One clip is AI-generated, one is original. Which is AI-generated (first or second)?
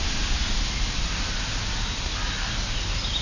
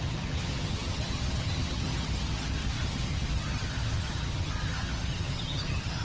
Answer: second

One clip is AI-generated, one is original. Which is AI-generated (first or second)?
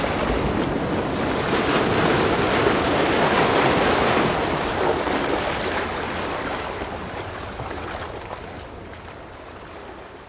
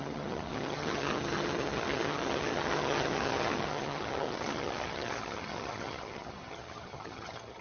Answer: second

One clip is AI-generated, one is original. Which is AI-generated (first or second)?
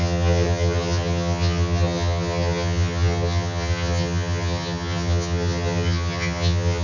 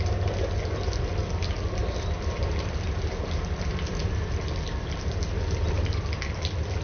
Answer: first